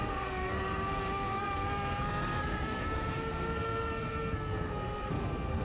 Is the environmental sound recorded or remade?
remade